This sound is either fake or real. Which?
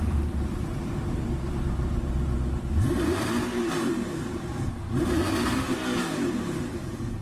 fake